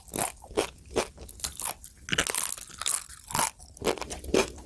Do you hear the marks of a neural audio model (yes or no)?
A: no